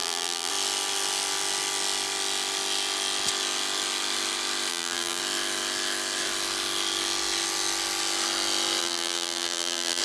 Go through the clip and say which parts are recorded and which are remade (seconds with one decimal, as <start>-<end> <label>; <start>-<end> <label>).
0.0-0.5 remade; 0.5-4.7 recorded; 4.7-5.2 remade; 5.2-8.8 recorded; 8.8-10.0 remade